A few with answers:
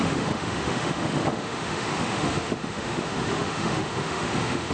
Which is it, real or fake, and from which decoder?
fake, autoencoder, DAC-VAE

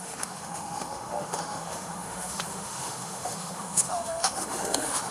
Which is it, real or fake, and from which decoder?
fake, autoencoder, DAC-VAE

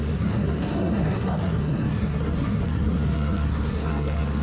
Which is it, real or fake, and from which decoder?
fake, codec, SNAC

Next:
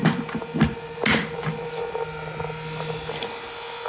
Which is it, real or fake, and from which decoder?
real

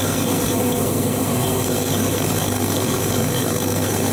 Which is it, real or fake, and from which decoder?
fake, codec, SNAC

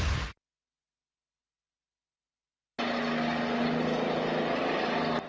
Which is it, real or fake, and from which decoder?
real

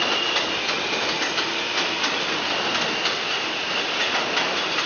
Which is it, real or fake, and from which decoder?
real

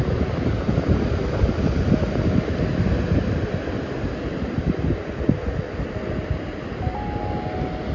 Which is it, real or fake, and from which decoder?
real